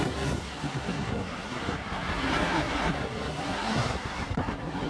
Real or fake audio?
fake